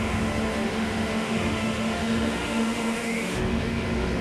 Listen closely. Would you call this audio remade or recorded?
remade